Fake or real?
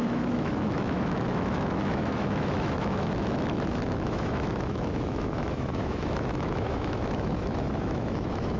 fake